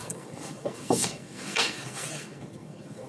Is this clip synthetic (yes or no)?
yes